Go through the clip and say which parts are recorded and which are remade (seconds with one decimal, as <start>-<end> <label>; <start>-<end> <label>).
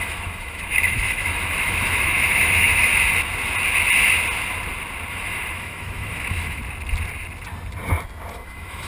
0.0-2.9 remade; 2.9-5.1 recorded; 5.1-6.6 remade; 6.6-8.3 recorded; 8.3-8.9 remade